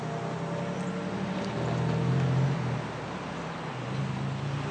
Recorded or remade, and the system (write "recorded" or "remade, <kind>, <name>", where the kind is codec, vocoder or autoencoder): recorded